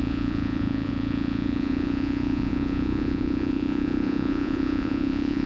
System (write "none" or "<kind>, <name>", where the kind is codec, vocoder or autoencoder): vocoder, Vocos